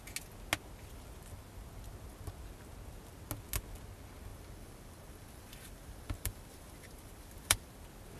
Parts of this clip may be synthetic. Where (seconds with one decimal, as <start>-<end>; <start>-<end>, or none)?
4.3-7.7